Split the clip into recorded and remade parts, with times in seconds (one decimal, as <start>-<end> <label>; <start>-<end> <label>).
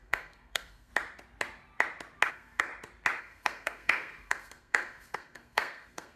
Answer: 0.0-0.9 remade; 0.9-2.3 recorded; 2.3-2.7 remade; 2.7-3.2 recorded; 3.2-6.2 remade